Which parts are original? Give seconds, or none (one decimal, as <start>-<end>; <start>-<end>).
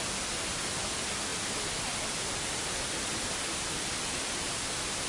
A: 0.0-5.1